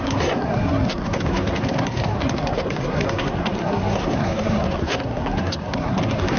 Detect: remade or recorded remade